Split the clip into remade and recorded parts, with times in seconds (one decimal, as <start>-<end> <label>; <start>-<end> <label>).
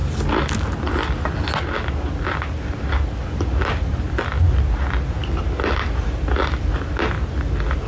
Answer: 0.0-7.9 recorded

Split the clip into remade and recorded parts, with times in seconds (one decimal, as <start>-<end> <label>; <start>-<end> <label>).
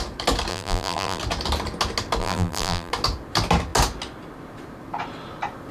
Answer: 0.0-0.5 recorded; 0.5-1.2 remade; 1.2-2.2 recorded; 2.2-2.9 remade; 2.9-5.7 recorded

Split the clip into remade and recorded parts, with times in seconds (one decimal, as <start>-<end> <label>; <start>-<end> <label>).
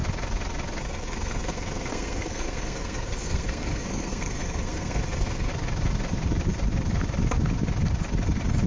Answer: 0.0-0.8 recorded; 0.8-5.5 remade; 5.5-8.7 recorded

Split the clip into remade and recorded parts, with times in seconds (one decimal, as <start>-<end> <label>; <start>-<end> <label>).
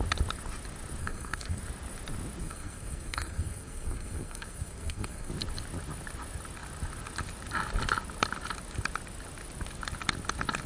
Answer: 0.0-1.0 recorded; 1.0-1.6 remade; 1.6-2.4 recorded; 2.4-5.3 remade; 5.3-10.7 recorded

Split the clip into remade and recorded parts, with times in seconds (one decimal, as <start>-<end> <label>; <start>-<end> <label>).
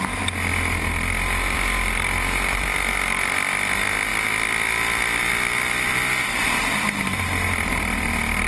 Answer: 0.0-8.5 recorded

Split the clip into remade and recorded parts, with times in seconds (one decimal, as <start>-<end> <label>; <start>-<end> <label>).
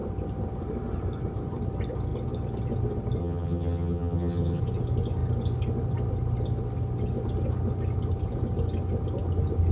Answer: 0.0-3.2 recorded; 3.2-4.6 remade; 4.6-9.7 recorded